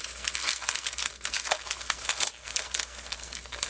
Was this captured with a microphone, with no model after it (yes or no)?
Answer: no